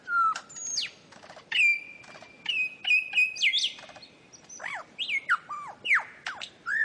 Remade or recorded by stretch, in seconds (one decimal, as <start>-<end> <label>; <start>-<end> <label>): 0.0-6.8 recorded